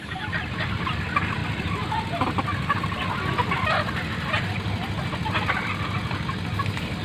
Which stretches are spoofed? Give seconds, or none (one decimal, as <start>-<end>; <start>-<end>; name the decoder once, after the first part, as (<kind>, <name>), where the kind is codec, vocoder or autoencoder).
0.0-1.4 (vocoder, BigVGAN v2); 5.6-6.0